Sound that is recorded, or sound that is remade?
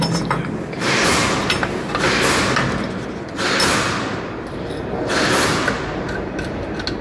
recorded